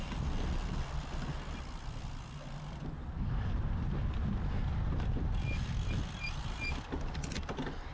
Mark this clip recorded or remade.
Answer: recorded